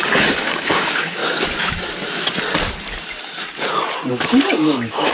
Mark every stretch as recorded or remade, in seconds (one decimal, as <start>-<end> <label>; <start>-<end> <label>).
0.0-1.2 remade; 1.2-4.1 recorded; 4.1-5.1 remade

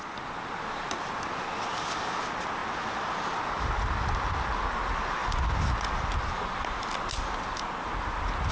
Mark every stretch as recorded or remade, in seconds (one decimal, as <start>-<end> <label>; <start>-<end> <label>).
0.0-8.5 recorded

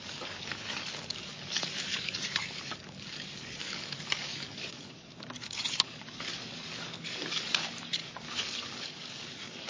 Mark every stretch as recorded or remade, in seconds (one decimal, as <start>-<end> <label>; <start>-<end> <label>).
0.0-9.7 remade

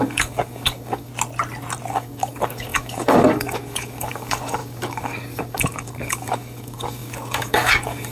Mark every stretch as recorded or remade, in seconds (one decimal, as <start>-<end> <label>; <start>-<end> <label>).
0.0-1.1 remade; 1.1-1.9 recorded; 1.9-8.1 remade

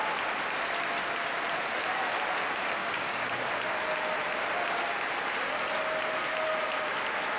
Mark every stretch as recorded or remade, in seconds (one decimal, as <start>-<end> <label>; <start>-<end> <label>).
0.0-2.8 recorded; 2.8-3.5 remade; 3.5-7.4 recorded

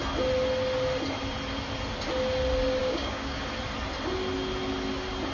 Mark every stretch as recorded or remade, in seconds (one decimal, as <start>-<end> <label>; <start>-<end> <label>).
0.0-2.8 recorded; 2.8-3.4 remade; 3.4-5.3 recorded

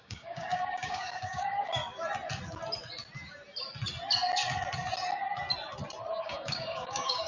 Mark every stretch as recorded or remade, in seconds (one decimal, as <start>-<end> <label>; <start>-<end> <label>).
0.0-1.8 remade; 1.8-6.2 recorded; 6.2-7.3 remade